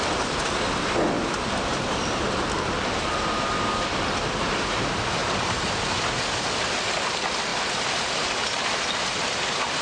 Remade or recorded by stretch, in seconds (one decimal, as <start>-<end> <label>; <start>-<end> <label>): 0.0-5.2 remade; 5.2-6.7 recorded; 6.7-7.5 remade; 7.5-9.3 recorded; 9.3-9.8 remade